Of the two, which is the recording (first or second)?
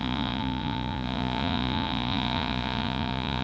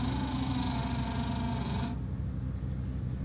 second